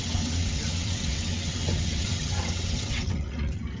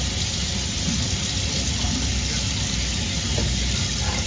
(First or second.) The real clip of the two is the second